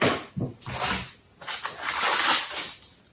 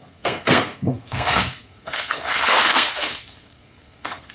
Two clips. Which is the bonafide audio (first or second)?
first